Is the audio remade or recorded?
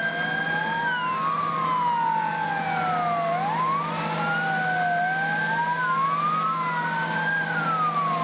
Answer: recorded